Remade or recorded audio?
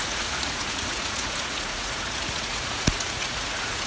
remade